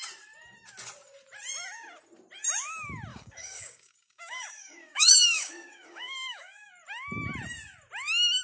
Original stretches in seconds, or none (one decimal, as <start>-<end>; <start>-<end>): 0.0-3.1; 6.7-8.4

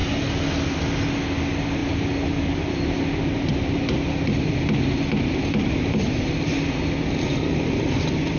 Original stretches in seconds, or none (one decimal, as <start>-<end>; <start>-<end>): 0.0-8.4

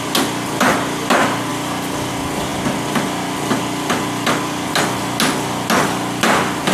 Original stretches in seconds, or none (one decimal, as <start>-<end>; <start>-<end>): 0.0-1.5; 2.1-6.7